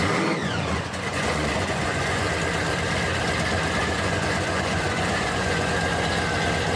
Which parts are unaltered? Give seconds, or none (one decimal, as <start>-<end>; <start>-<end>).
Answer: 0.0-0.4; 2.3-3.8; 5.7-6.8